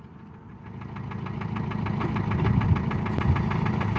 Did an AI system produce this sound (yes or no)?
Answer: no